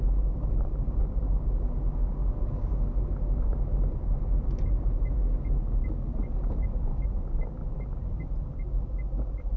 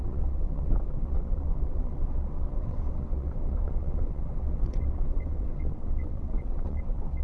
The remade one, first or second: second